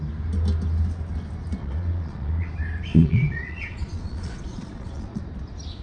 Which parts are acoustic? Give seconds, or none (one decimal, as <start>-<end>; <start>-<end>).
0.0-1.6; 2.5-2.9; 5.2-5.8